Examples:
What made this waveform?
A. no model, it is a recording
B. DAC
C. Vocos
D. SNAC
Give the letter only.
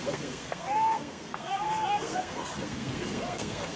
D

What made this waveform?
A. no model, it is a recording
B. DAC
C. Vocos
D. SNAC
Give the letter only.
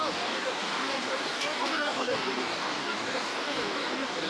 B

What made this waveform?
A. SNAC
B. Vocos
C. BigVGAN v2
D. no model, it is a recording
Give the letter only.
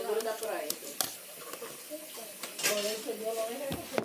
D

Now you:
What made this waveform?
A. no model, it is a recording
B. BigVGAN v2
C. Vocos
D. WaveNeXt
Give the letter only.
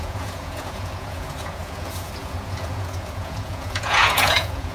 C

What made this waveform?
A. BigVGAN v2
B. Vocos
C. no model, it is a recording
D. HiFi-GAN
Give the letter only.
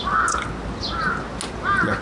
C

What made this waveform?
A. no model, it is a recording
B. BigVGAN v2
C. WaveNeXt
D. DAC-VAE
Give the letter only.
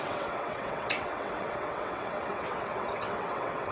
C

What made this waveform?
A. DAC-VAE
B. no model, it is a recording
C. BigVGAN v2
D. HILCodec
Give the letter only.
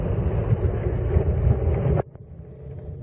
B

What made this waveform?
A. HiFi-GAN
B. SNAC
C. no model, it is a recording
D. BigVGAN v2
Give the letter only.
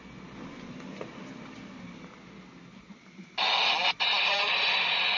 C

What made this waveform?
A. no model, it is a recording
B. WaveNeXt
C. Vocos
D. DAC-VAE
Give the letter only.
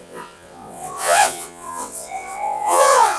B